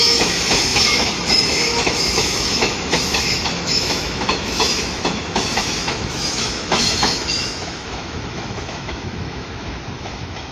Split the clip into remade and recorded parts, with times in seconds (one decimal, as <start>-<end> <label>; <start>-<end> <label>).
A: 0.0-10.5 remade